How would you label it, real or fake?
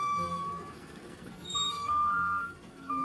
fake